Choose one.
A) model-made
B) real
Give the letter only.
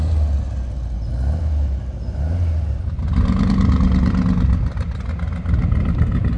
B